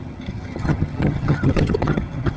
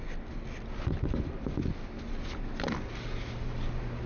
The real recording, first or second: second